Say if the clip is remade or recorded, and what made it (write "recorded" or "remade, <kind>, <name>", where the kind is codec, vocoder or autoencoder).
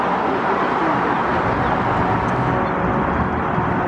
recorded